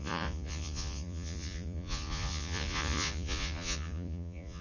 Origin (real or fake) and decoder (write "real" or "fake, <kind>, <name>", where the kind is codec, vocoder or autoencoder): fake, vocoder, Vocos